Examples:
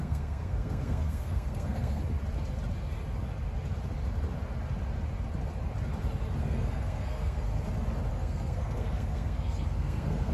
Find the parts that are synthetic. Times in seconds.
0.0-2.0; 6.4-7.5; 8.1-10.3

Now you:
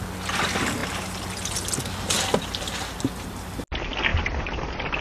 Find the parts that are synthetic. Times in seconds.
none